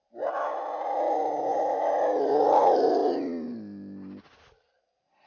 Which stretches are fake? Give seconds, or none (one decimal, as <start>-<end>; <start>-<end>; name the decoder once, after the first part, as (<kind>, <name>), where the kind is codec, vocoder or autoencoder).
0.0-1.8 (vocoder, BigVGAN v2)